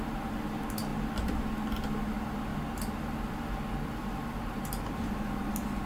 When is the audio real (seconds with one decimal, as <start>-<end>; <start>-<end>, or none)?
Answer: 0.0-2.5; 5.5-5.9

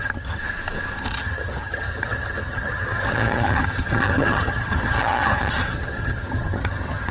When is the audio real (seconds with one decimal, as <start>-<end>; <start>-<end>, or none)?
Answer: 0.4-1.1

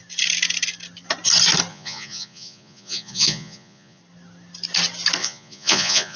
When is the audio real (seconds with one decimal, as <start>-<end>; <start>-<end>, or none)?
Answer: 0.0-1.7; 4.0-5.2

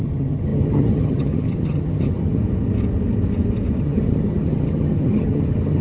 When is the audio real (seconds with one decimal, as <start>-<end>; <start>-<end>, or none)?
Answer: 2.4-3.8

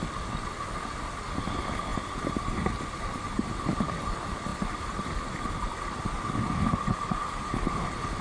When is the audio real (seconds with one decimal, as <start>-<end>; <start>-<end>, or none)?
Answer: 0.0-8.2

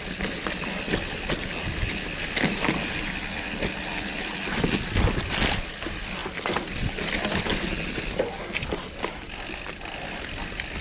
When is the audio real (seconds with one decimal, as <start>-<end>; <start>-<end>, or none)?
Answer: 0.0-10.8

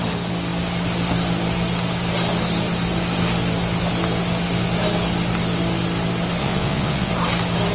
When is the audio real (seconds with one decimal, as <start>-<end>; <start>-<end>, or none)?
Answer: 0.0-6.4; 7.1-7.7

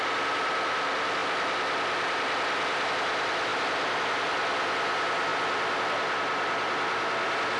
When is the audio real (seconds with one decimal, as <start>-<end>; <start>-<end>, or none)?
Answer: 0.0-7.6